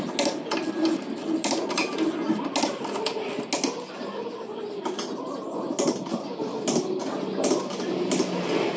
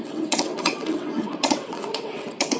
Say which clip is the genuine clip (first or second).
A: first